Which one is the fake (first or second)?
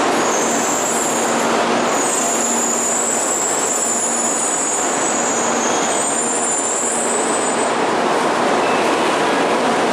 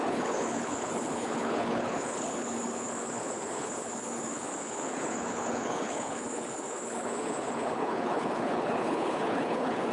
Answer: second